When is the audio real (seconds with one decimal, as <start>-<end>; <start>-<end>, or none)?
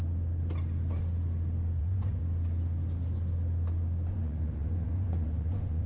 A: 0.0-1.8; 2.2-4.1